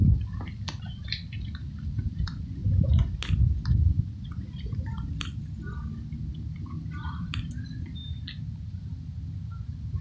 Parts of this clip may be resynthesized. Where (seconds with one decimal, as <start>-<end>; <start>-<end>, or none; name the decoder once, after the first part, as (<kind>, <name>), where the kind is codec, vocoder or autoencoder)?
0.0-2.6 (vocoder, BigVGAN v2); 6.5-8.0